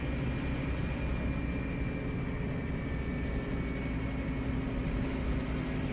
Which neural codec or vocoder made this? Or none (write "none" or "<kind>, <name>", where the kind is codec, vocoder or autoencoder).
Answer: none